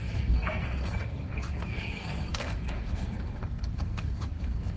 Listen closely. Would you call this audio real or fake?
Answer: fake